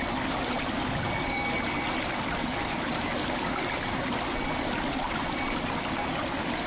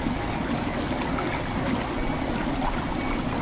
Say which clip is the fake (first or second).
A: first